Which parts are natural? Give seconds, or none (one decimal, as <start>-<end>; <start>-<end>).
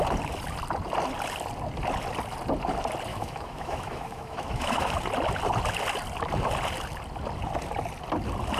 0.0-3.1; 4.9-8.6